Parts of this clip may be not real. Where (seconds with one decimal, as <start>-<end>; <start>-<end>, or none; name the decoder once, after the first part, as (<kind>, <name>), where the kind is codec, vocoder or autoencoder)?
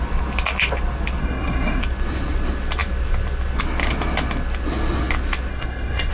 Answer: 1.2-1.8 (codec, SNAC); 5.5-6.1